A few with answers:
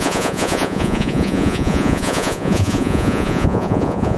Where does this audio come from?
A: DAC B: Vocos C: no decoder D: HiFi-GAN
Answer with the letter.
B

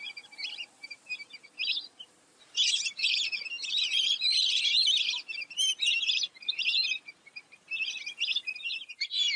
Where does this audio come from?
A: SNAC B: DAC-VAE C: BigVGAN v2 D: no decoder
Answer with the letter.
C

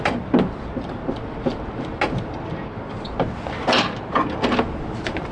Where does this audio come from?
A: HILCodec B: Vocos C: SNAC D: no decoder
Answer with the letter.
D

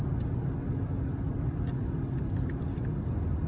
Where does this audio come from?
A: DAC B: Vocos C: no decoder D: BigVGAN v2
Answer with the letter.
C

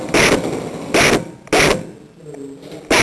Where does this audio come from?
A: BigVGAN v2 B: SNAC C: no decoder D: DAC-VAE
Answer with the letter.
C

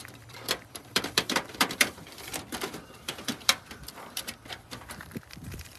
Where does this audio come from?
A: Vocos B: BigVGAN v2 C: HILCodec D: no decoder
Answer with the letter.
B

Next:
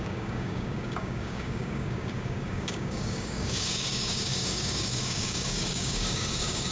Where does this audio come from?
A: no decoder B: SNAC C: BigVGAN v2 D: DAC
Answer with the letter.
D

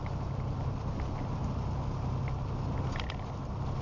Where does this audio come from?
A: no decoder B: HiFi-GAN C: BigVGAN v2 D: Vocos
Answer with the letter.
A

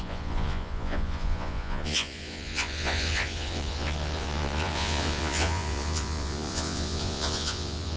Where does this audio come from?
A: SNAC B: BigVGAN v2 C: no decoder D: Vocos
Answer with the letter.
D